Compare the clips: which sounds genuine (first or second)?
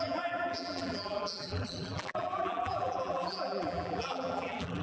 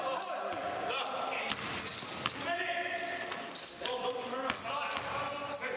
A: second